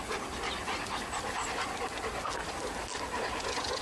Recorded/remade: remade